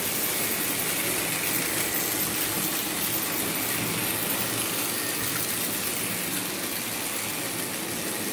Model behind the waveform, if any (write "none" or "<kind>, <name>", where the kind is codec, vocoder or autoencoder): none